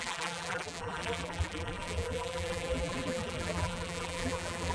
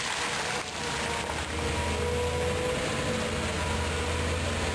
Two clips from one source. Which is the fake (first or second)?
first